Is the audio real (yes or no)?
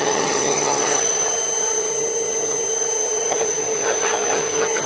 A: no